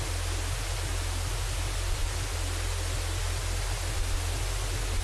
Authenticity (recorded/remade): recorded